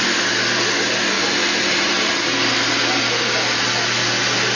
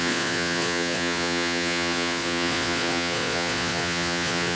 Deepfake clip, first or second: second